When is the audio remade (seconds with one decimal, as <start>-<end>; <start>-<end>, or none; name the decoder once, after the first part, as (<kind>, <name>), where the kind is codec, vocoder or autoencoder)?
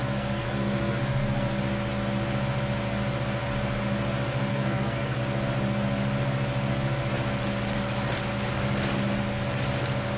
0.0-1.6 (codec, SNAC); 4.5-5.2